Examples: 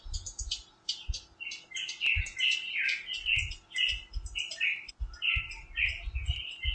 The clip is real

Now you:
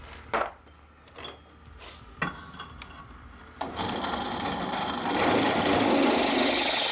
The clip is real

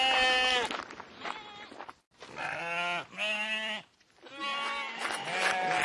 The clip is real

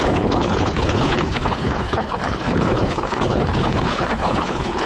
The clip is fake